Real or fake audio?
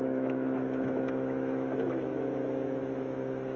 fake